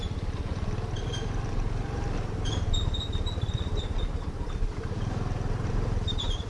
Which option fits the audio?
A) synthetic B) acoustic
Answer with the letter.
B